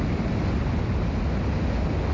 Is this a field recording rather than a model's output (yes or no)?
yes